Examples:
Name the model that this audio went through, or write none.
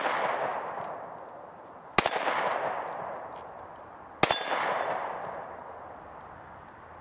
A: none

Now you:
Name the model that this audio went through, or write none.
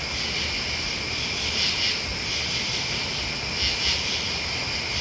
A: none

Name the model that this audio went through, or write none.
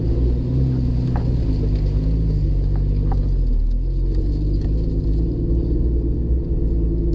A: none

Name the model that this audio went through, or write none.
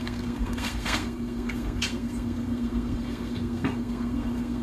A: codec, SNAC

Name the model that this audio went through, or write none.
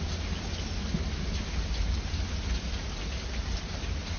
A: none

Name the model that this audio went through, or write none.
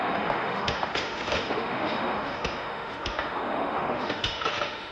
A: autoencoder, DAC-VAE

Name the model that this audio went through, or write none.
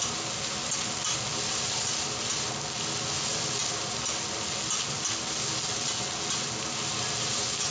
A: none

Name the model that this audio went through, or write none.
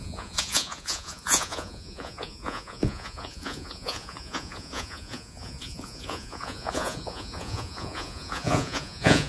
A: vocoder, Vocos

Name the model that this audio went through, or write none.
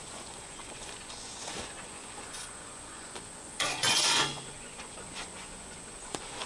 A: vocoder, Vocos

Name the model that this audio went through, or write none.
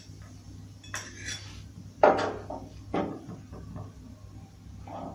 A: none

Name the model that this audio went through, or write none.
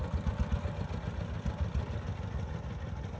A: none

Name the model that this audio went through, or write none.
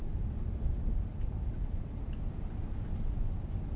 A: none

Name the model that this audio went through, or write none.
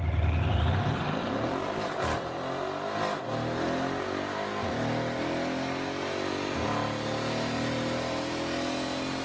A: none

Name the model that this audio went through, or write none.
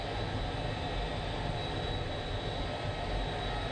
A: none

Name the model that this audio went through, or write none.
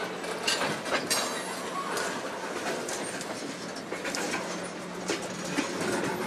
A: none